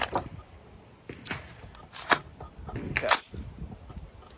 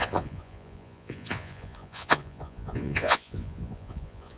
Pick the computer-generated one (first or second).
second